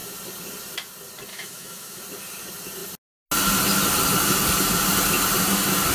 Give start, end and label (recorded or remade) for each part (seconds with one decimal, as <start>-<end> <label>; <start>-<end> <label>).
0.0-1.3 recorded; 1.3-2.0 remade; 2.0-5.9 recorded